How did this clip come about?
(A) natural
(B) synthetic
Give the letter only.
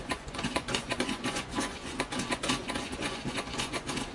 B